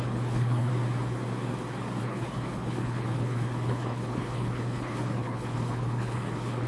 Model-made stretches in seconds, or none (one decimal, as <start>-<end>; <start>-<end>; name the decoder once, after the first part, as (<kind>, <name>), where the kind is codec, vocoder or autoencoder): 0.0-0.7 (codec, HILCodec); 2.0-6.7